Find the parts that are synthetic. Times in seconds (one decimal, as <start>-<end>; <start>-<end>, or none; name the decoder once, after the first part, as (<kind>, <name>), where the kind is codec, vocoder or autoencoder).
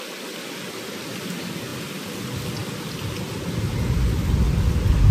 none